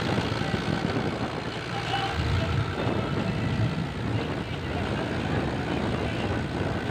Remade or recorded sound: recorded